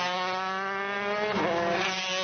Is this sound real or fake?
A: real